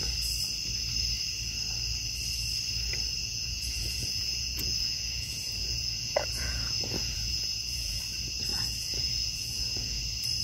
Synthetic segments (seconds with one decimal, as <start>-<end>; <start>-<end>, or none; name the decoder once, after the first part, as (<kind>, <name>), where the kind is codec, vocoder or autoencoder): 3.2-8.0 (vocoder, Vocos); 8.5-10.0